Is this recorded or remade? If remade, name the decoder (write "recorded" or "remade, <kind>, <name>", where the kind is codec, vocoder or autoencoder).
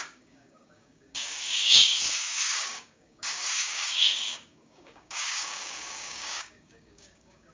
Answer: remade, codec, DAC